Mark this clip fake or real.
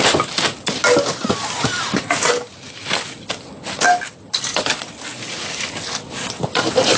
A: real